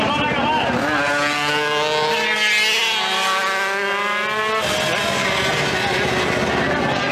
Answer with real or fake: real